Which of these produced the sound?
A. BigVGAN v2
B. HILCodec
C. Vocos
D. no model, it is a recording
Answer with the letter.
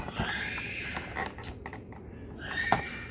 D